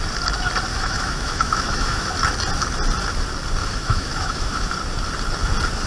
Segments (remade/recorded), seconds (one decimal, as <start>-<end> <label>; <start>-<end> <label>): 0.0-0.7 recorded; 0.7-2.1 remade; 2.1-3.6 recorded; 3.6-4.7 remade; 4.7-5.9 recorded